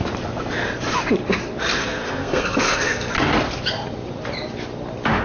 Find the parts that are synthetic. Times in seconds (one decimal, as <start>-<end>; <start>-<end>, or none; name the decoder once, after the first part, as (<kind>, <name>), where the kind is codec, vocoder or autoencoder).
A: 1.8-3.1 (codec, SNAC)